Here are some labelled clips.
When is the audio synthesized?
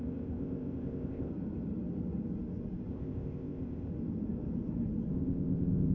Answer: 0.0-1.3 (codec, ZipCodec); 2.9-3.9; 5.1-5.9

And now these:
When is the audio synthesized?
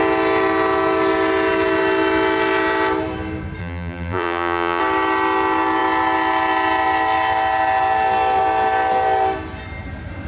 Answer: 3.6-4.8 (vocoder, BigVGAN v2)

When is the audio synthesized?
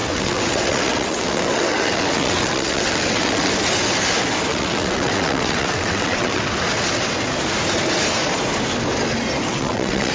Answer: 0.0-3.5 (vocoder, WaveNeXt); 4.5-6.4; 9.5-10.1